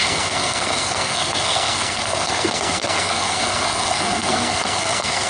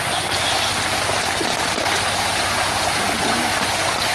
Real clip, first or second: second